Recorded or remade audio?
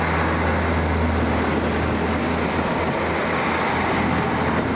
recorded